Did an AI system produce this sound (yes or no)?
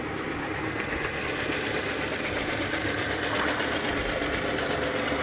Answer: no